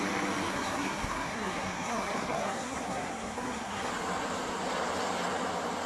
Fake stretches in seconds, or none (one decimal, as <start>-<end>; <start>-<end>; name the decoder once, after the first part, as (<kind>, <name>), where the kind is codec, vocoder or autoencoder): 0.5-3.9 (codec, SNAC)

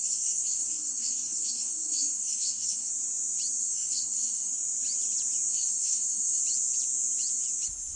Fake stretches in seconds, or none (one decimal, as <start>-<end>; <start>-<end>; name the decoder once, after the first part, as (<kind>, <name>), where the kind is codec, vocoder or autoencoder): 0.0-2.9 (codec, SNAC); 3.6-4.5; 5.5-6.4